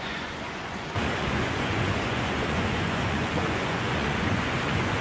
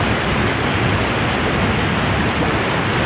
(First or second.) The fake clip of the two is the first